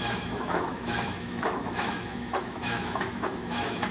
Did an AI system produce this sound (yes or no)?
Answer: yes